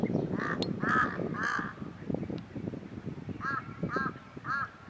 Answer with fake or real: real